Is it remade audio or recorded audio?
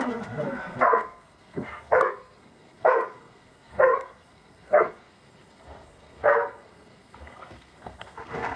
remade